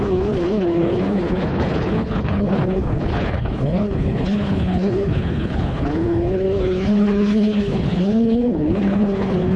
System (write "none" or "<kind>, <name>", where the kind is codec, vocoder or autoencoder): codec, HILCodec